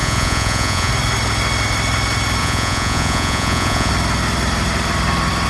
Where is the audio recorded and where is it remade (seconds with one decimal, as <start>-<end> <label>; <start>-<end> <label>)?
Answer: 0.0-0.9 remade; 0.9-2.4 recorded; 2.4-3.9 remade; 3.9-5.5 recorded